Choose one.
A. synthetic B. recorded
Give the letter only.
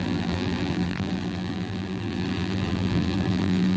A